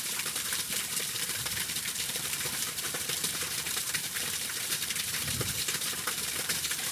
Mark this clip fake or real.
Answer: fake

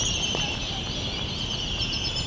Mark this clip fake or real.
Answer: real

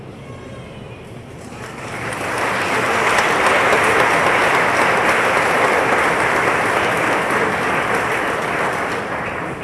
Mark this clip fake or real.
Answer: real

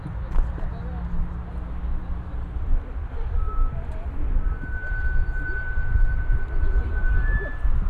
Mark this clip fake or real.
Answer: real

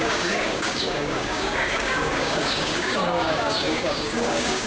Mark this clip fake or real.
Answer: fake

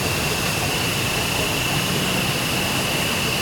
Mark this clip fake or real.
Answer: real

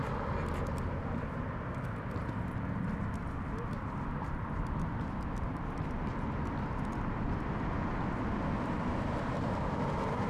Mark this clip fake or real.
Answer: real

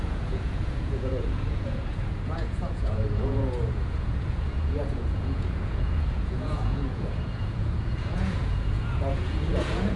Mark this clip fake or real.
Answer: fake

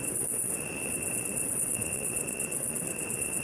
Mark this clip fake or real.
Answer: fake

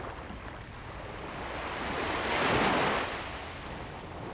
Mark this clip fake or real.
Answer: real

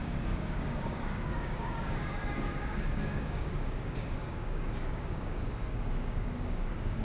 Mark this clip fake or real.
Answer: fake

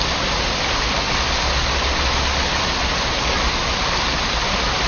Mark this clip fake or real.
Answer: real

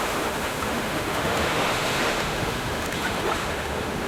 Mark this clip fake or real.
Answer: fake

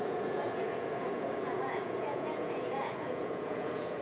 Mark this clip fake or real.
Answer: fake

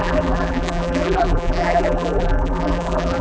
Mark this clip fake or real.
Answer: fake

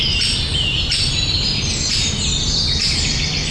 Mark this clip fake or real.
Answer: real